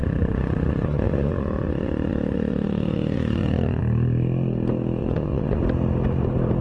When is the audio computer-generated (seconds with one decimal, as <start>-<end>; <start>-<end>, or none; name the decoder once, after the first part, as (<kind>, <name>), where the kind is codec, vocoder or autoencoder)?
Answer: 0.0-3.8 (vocoder, Vocos); 5.0-5.6